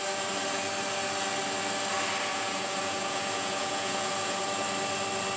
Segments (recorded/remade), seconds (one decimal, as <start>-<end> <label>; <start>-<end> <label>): 0.0-2.3 recorded; 2.3-4.4 remade; 4.4-5.4 recorded